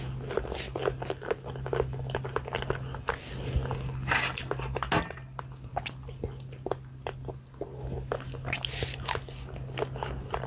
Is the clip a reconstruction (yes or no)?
no